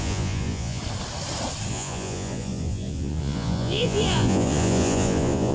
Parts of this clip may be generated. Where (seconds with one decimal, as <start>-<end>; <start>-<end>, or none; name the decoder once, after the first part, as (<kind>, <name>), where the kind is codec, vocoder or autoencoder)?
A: 0.0-0.8 (vocoder, Vocos); 1.7-5.5